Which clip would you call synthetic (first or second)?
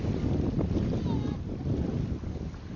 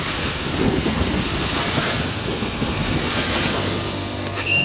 second